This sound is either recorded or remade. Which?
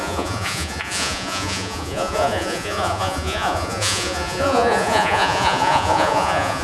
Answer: remade